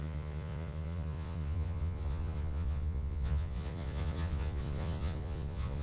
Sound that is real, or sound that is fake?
fake